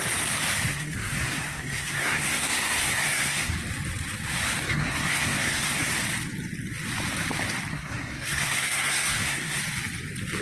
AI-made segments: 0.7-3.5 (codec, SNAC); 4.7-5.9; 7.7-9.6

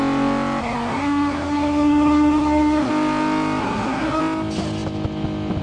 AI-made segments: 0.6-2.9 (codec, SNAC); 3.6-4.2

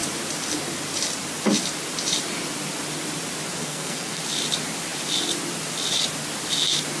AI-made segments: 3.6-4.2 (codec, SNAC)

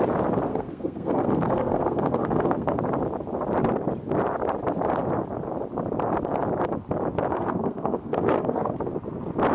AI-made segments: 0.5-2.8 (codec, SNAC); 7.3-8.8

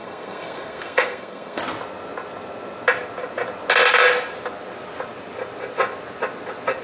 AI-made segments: 0.0-1.6 (codec, SNAC)

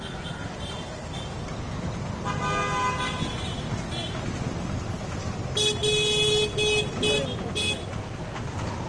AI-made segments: none

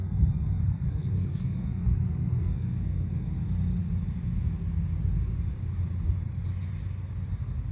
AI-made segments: 0.0-3.3 (codec, SNAC)

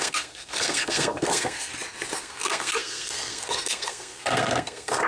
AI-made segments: 0.0-1.7 (codec, SNAC); 2.2-5.1